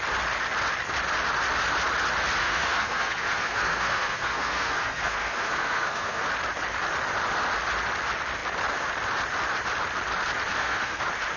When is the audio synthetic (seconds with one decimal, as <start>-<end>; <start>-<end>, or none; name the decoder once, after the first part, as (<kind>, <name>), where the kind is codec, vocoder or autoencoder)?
2.4-6.2 (codec, SNAC); 10.5-11.0